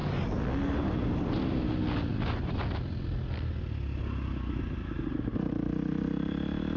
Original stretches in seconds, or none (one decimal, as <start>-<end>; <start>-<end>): 0.0-6.8